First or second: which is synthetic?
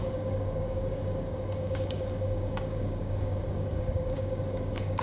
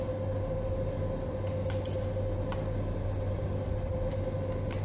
first